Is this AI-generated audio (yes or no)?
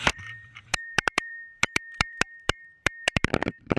yes